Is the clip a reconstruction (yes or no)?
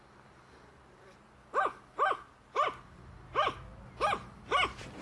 no